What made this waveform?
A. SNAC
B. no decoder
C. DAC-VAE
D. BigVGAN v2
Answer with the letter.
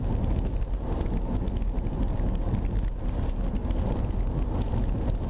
B